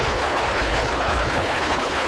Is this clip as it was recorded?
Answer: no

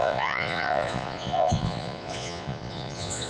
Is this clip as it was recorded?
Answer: no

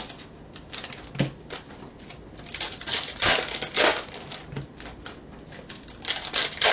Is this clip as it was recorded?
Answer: yes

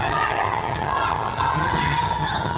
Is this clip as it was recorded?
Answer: no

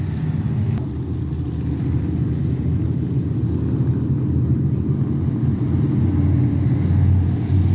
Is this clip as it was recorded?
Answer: yes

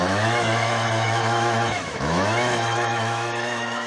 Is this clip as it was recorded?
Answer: no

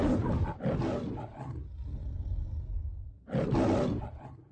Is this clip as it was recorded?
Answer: yes